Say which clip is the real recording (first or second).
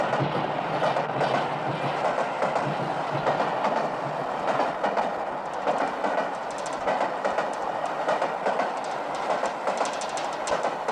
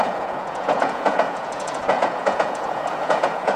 first